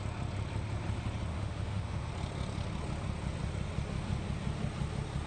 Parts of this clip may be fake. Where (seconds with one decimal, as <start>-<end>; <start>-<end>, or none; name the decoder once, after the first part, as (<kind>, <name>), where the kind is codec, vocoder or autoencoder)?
1.3-2.1 (autoencoder, DAC-VAE)